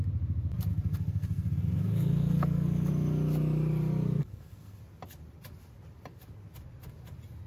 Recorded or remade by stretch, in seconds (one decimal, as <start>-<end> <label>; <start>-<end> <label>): 0.0-0.7 recorded; 0.7-2.9 remade; 2.9-4.2 recorded; 4.2-4.8 remade; 4.8-7.5 recorded